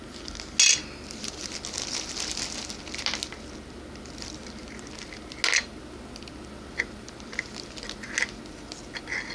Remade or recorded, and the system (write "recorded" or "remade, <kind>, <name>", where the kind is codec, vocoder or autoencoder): recorded